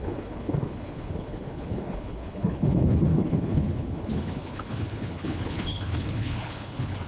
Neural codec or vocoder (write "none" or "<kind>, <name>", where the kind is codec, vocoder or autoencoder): codec, HILCodec